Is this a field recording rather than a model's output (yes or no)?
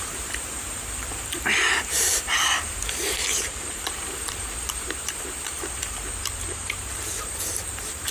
no